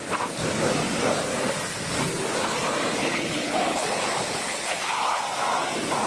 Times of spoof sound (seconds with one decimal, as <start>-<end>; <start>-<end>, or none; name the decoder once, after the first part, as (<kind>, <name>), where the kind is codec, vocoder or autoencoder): 3.0-5.2 (codec, HILCodec)